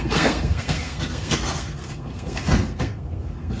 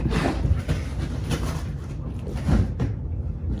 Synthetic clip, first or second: first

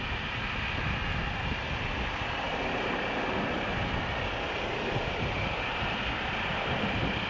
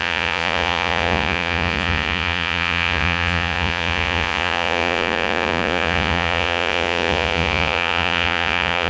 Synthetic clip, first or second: second